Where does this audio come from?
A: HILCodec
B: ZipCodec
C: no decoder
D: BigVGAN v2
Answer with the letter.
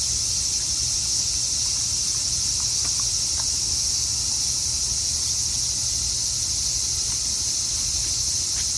C